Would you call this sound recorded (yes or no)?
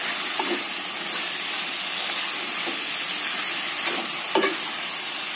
yes